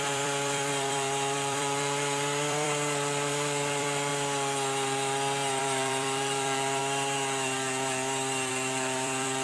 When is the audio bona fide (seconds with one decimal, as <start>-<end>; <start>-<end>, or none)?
4.1-5.6; 6.8-8.5